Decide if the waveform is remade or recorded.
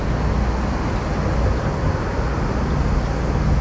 recorded